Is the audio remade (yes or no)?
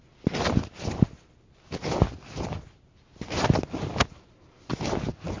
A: no